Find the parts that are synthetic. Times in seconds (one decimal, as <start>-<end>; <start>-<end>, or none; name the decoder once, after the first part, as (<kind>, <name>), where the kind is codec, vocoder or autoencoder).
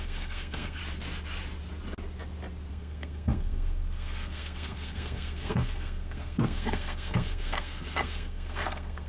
0.0-0.8 (codec, SNAC); 2.7-9.1